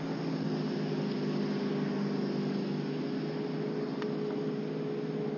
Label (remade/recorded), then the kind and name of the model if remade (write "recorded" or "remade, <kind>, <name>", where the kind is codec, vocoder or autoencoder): recorded